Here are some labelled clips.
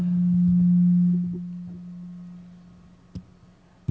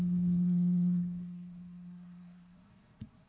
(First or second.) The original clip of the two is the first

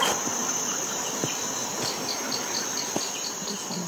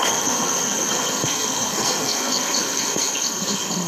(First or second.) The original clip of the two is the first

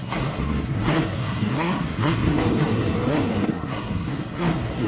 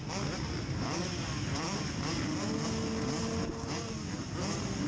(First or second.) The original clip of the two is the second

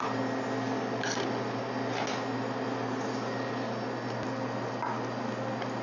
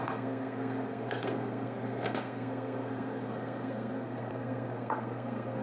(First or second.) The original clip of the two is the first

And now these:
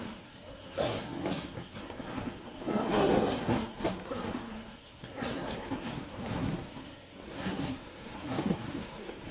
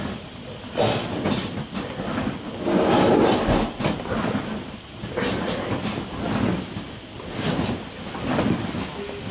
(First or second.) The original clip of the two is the second